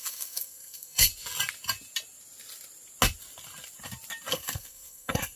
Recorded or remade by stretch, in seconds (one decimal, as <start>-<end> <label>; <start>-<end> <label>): 0.0-1.1 remade; 1.1-4.3 recorded; 4.3-5.4 remade